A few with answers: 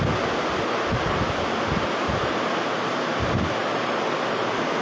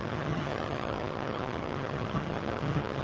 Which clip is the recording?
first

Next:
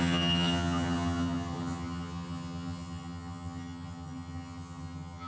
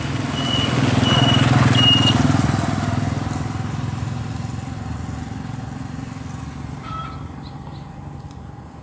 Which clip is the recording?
second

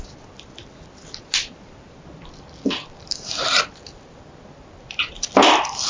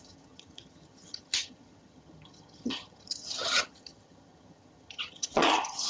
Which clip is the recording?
first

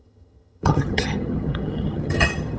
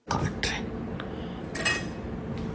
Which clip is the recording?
second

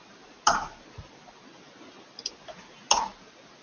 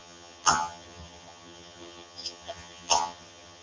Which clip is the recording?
first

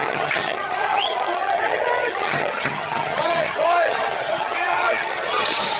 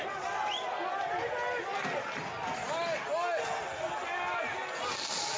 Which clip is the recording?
second